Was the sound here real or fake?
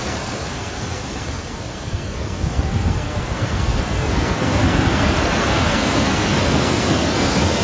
fake